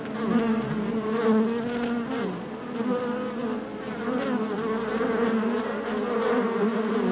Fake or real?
real